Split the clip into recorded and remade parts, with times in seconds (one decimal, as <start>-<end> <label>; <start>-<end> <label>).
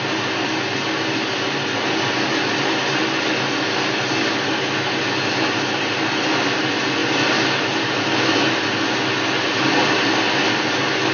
0.0-11.1 recorded